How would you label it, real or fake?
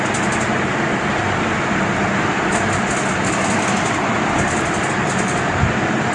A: real